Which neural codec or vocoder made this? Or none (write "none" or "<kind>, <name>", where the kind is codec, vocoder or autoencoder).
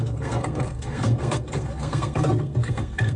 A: codec, SNAC